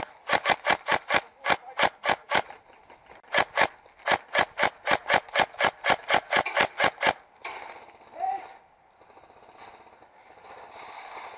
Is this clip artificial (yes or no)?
no